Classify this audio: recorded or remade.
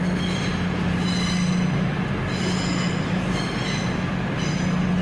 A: recorded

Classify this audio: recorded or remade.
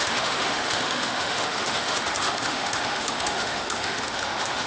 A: remade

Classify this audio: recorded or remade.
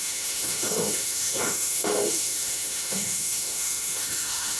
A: remade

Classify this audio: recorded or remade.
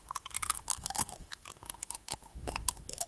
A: remade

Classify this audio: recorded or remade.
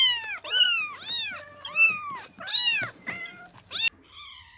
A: recorded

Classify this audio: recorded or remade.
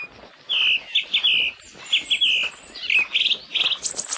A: recorded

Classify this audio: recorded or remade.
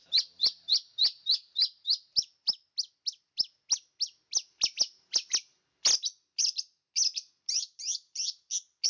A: recorded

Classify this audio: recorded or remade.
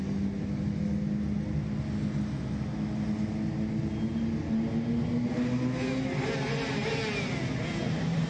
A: recorded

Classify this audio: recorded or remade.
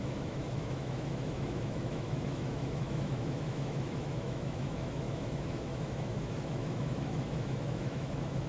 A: remade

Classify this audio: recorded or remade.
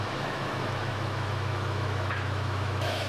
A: remade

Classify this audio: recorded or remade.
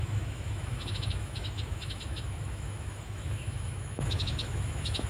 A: remade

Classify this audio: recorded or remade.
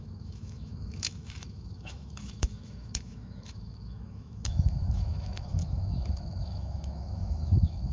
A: remade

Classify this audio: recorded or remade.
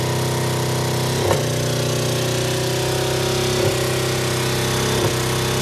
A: recorded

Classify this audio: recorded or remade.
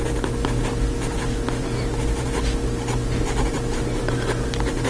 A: recorded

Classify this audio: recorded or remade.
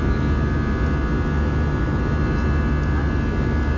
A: recorded